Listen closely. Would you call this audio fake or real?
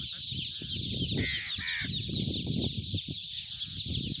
real